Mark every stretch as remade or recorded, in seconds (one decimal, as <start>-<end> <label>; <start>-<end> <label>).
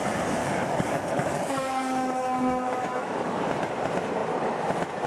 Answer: 0.0-0.4 recorded; 0.4-3.5 remade; 3.5-5.1 recorded